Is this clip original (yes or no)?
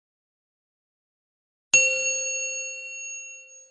yes